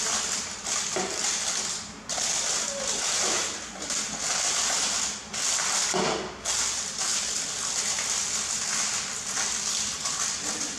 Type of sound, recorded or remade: recorded